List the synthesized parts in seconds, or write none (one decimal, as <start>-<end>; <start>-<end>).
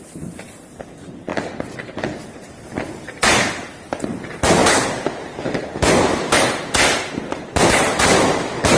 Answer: none